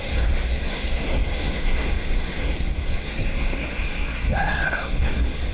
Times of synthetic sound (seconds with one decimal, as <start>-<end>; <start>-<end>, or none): 0.0-5.5

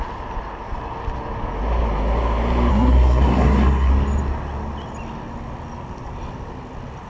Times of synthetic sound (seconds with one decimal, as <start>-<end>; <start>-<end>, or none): 2.7-3.9

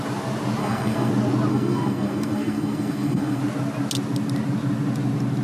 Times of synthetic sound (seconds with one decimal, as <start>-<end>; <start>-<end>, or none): 0.6-1.1; 1.5-3.4